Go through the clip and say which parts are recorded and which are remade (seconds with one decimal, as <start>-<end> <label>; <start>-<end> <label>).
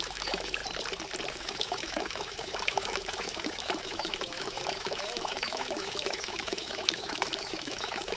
0.0-0.6 remade; 0.6-1.3 recorded; 1.3-8.2 remade